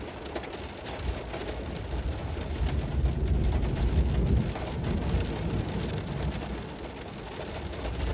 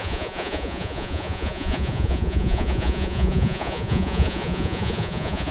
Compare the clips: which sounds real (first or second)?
first